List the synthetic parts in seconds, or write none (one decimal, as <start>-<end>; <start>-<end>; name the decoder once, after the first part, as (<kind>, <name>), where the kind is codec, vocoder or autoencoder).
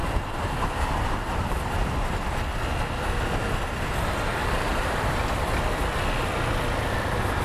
0.0-1.6 (vocoder, BigVGAN v2); 4.4-5.3